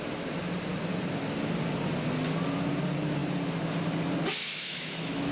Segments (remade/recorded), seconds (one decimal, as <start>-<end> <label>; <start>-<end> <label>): 0.0-4.4 recorded; 4.4-5.3 remade